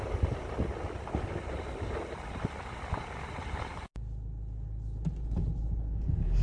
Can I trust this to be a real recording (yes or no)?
yes